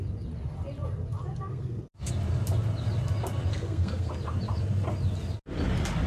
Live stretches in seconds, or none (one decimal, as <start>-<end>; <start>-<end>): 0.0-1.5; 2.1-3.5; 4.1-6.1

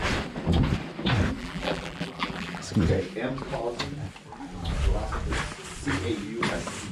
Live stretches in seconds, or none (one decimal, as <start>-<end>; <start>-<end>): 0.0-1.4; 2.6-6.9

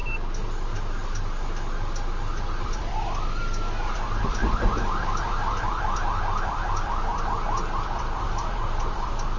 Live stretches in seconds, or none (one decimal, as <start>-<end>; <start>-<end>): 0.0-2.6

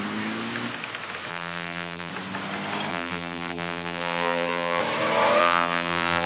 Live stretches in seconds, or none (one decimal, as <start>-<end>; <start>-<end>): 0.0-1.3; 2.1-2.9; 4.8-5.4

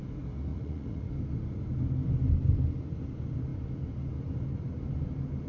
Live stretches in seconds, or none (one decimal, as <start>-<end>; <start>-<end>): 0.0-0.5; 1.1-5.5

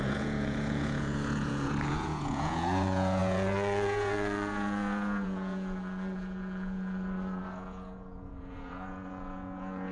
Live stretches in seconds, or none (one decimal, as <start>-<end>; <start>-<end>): none

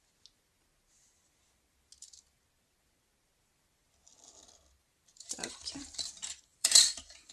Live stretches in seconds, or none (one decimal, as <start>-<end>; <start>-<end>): 0.0-5.1; 5.8-6.5